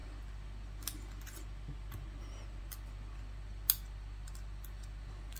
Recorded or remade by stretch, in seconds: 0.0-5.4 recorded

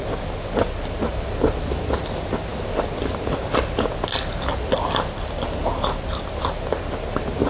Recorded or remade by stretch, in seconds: 0.0-7.5 recorded